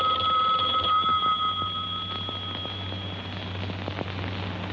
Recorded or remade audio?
recorded